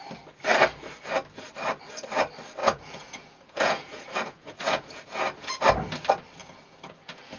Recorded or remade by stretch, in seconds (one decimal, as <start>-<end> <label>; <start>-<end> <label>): 0.0-2.6 recorded; 2.6-5.6 remade; 5.6-6.4 recorded; 6.4-7.4 remade